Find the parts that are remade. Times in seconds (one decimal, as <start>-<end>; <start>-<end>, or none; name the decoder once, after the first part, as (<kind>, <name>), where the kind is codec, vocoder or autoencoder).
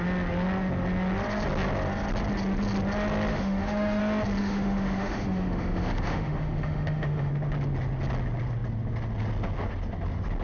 3.3-4.0 (autoencoder, DAC-VAE); 4.4-7.3